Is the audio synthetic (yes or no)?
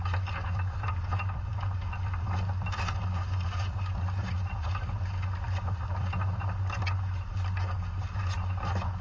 no